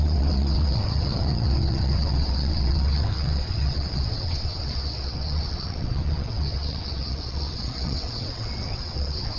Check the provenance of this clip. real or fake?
fake